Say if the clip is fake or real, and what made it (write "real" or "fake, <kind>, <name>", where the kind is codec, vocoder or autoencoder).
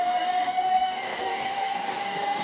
fake, codec, DAC